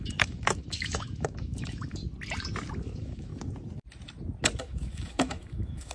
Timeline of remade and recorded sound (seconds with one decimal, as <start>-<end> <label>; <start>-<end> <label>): 0.0-2.0 remade; 2.0-2.8 recorded; 2.8-3.3 remade; 3.3-4.6 recorded; 4.6-5.9 remade